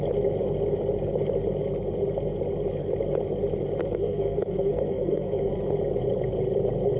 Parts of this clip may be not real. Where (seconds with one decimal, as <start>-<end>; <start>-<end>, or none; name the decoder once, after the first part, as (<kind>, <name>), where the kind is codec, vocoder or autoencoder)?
3.8-5.5 (codec, SNAC)